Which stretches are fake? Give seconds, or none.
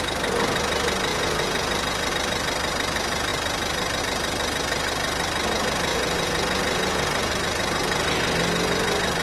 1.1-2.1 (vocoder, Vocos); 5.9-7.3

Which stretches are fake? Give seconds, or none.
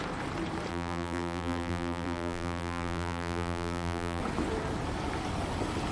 0.7-4.2 (vocoder, BigVGAN v2)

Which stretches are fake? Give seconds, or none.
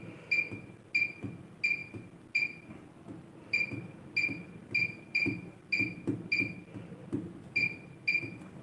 none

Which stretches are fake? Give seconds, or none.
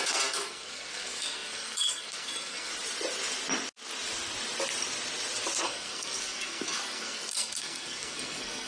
0.0-2.7 (codec, SNAC); 5.6-8.7